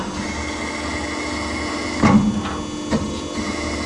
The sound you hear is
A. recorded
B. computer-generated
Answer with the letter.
A